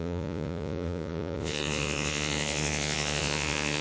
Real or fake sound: fake